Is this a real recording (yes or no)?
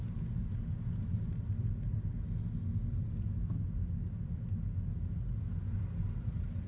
yes